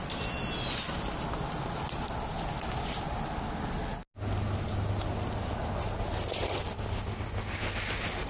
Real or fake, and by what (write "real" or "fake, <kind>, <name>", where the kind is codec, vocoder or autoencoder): real